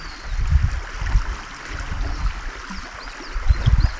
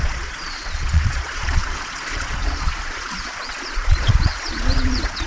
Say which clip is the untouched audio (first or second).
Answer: first